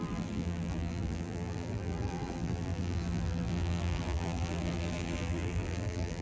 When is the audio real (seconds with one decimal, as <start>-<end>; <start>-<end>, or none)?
none